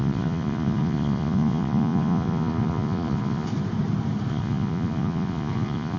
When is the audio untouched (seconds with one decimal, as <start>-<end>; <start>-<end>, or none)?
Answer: 3.5-4.3